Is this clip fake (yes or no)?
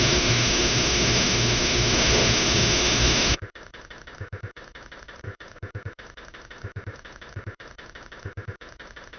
yes